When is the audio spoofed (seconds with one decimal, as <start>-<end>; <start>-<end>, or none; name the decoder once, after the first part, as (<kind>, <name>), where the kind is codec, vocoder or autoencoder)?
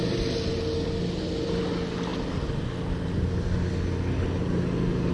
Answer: none